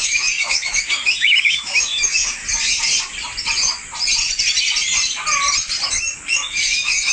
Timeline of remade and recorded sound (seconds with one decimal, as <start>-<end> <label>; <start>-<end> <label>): 0.0-2.4 remade; 2.4-5.9 recorded; 5.9-7.1 remade